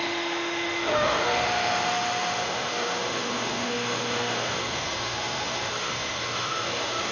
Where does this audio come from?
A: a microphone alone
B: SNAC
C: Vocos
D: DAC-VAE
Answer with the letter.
D